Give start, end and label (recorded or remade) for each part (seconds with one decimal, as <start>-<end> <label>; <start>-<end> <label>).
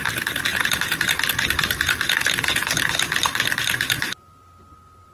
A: 0.0-5.1 recorded